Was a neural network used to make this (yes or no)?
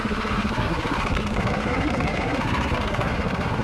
yes